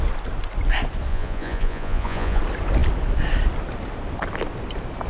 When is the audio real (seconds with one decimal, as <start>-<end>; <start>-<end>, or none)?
0.0-1.1; 2.4-5.1